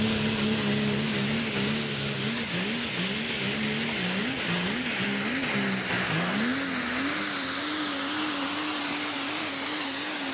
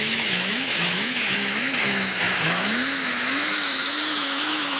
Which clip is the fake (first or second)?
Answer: second